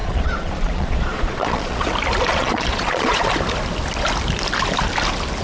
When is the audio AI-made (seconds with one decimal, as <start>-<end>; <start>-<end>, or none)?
0.0-1.9; 2.3-3.3

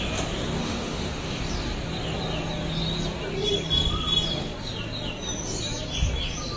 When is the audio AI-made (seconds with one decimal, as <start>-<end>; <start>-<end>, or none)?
0.6-1.4

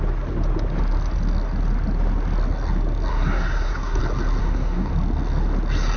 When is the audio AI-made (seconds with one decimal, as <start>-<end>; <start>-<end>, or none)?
3.1-4.0; 4.4-4.9